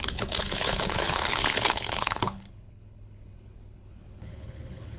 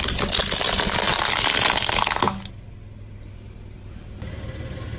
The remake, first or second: first